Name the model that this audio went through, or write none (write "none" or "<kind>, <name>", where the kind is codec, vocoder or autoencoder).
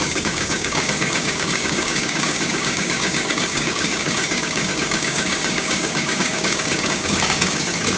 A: codec, DAC